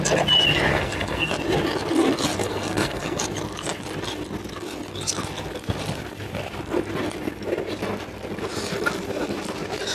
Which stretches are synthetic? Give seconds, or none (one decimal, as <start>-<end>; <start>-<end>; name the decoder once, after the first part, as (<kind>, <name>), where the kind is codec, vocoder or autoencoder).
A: 0.7-1.3 (codec, SNAC); 2.4-3.2